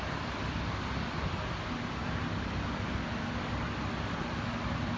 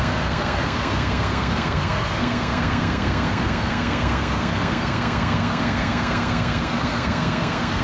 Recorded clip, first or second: first